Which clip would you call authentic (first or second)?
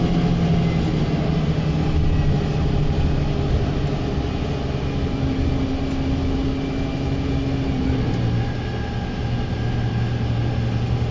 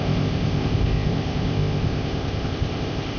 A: first